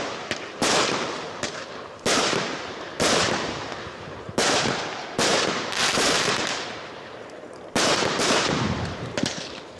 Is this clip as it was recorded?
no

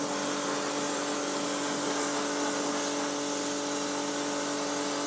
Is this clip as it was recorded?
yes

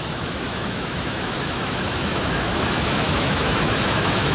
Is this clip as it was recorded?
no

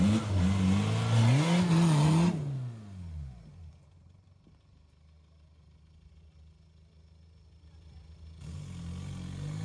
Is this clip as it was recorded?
yes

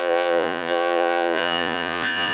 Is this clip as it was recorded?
no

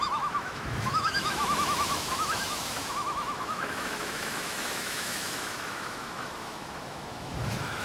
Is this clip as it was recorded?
no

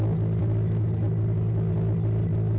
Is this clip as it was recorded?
yes